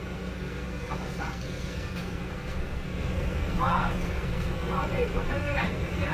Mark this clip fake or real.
fake